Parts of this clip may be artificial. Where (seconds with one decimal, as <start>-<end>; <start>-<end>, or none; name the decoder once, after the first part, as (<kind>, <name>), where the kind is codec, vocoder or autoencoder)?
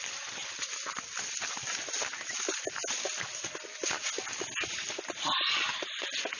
0.0-0.4 (vocoder, BigVGAN v2); 4.0-6.4